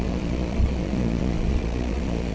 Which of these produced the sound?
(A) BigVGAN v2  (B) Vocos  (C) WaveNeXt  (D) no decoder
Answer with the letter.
B